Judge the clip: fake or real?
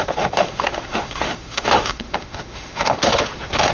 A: fake